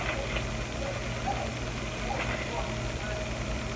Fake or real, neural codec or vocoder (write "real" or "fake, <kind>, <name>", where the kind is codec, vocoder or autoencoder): real